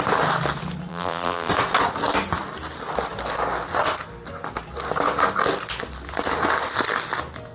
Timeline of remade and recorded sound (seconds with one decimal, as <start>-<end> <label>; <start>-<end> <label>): 0.0-0.9 recorded; 0.9-1.5 remade; 1.5-7.5 recorded